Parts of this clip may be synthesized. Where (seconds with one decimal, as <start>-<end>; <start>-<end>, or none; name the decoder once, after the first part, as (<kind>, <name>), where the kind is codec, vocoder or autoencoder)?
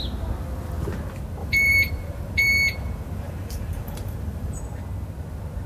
1.4-4.6 (vocoder, BigVGAN v2)